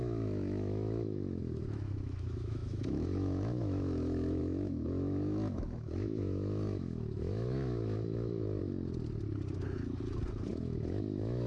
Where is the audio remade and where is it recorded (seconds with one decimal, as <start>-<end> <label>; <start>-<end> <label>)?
0.0-8.6 remade; 8.6-10.5 recorded; 10.5-11.5 remade